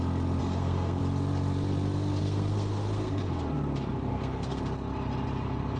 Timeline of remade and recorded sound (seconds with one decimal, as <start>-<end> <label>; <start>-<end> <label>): 0.0-0.4 recorded; 0.4-1.0 remade; 1.0-2.2 recorded; 2.2-3.2 remade; 3.2-4.1 recorded; 4.1-4.6 remade; 4.6-5.8 recorded